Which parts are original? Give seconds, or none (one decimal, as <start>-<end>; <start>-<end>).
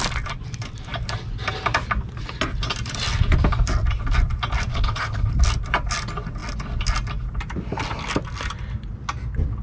0.0-4.7; 5.3-9.6